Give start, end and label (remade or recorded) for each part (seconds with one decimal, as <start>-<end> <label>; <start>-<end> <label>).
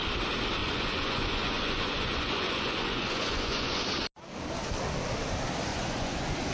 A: 0.0-0.6 recorded; 0.6-3.8 remade; 3.8-5.7 recorded; 5.7-6.5 remade